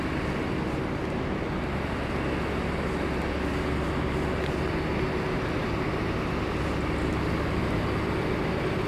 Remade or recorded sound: recorded